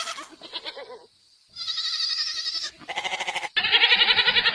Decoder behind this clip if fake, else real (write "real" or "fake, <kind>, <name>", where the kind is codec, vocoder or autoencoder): real